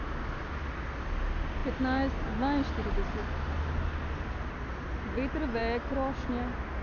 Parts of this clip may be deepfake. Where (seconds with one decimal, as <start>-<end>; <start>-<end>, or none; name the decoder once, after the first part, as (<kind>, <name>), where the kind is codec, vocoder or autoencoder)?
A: none